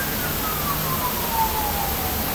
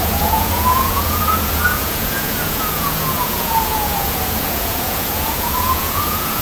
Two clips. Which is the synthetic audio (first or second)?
second